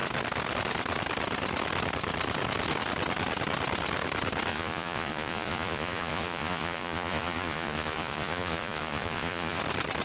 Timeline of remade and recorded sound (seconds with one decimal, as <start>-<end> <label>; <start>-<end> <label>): 0.0-4.5 recorded; 4.5-9.6 remade; 9.6-10.0 recorded